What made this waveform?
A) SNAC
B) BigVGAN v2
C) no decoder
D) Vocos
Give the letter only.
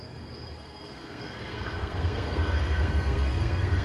A